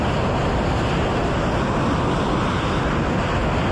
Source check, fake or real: real